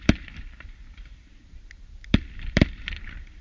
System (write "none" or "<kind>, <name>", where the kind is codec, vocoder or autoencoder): vocoder, BigVGAN v2